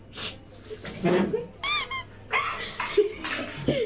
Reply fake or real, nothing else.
real